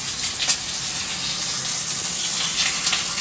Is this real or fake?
real